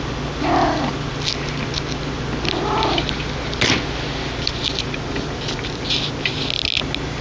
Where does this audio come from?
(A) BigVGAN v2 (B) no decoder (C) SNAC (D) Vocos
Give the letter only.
B